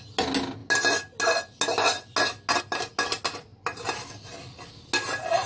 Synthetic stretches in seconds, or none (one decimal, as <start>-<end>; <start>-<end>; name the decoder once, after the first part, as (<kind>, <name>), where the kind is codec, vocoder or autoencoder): none